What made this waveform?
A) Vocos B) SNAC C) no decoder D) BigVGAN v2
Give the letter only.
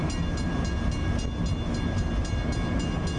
C